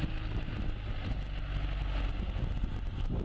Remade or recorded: recorded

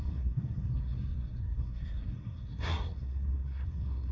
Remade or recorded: remade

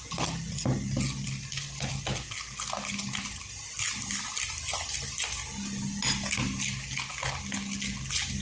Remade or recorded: recorded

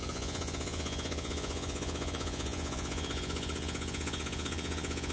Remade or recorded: remade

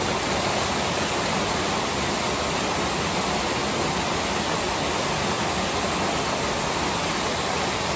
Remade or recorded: recorded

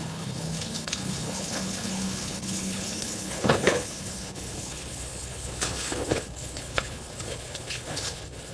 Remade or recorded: remade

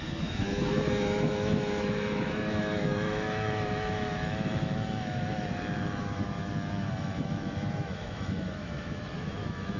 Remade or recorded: remade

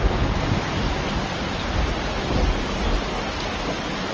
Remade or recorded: recorded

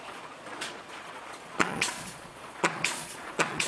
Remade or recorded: remade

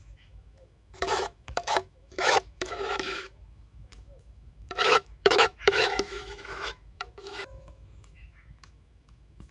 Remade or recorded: remade